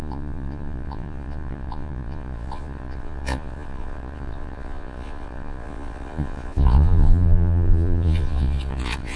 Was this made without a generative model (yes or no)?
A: no